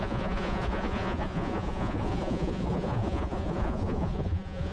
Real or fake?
fake